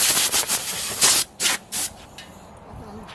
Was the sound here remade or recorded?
recorded